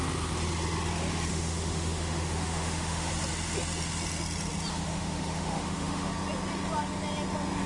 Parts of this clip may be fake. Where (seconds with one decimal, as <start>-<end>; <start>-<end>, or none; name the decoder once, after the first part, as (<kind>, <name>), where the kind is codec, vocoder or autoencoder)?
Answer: 1.3-3.1 (autoencoder, DAC-VAE); 4.7-6.1